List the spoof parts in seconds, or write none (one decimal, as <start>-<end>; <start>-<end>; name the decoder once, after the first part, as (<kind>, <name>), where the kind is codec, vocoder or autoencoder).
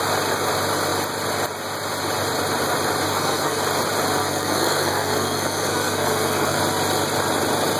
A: 3.1-3.6 (codec, SNAC); 4.2-6.6